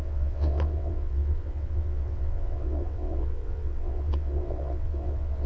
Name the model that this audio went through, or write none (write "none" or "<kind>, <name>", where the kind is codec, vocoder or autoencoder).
vocoder, WaveNeXt